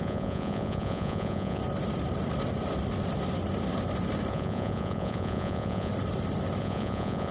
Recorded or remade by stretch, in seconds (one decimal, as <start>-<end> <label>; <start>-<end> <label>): 0.0-1.6 remade; 1.6-4.3 recorded; 4.3-5.9 remade; 5.9-6.6 recorded; 6.6-7.3 remade